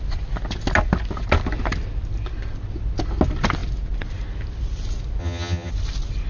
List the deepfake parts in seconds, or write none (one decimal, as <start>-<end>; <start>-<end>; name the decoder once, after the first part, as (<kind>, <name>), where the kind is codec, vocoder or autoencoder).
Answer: 5.2-5.7 (vocoder, HiFi-GAN)